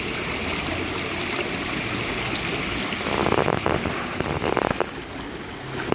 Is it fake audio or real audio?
real